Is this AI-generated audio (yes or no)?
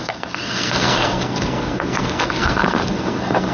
yes